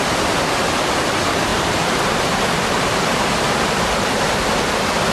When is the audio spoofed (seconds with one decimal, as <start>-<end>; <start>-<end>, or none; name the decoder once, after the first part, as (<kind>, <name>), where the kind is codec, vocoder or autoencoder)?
1.5-4.6 (vocoder, BigVGAN v2)